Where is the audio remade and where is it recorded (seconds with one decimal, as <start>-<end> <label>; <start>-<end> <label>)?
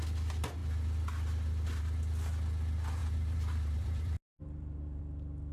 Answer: 0.0-3.0 recorded; 3.0-5.0 remade; 5.0-5.5 recorded